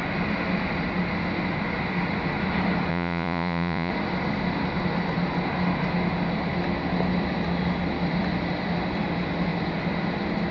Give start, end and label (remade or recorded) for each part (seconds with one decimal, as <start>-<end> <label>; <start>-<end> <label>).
0.0-2.9 recorded; 2.9-3.9 remade; 3.9-10.5 recorded